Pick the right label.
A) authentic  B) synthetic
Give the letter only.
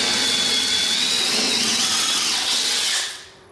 B